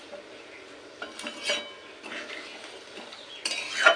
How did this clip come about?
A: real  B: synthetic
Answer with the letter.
A